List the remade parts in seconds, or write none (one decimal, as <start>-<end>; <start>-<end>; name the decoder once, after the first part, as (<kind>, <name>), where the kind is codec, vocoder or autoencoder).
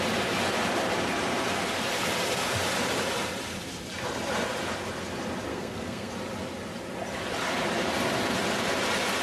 5.5-6.1 (codec, SNAC)